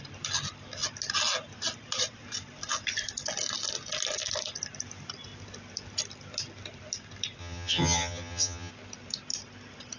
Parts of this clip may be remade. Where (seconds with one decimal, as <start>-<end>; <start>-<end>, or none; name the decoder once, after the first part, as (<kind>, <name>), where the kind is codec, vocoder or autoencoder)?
7.4-8.7 (vocoder, HiFi-GAN)

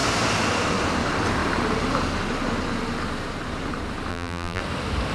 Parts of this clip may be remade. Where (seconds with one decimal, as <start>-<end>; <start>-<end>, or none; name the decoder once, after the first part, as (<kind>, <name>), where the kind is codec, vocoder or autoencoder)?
4.1-4.6 (vocoder, BigVGAN v2)

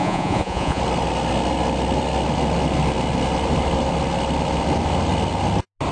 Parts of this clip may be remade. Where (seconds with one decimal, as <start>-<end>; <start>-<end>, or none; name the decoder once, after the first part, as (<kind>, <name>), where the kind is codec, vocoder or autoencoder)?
0.0-0.8 (vocoder, Vocos)